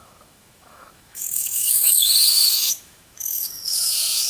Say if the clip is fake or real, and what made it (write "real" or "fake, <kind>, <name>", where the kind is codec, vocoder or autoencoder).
fake, autoencoder, DAC-VAE